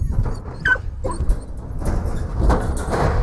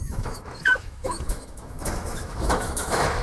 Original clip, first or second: first